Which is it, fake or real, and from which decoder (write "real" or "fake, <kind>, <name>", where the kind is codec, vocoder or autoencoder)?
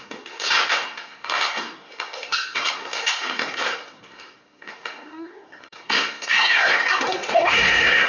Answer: fake, codec, SNAC